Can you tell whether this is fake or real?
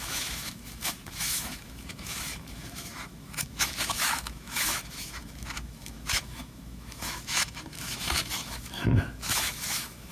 fake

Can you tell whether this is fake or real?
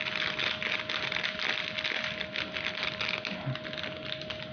real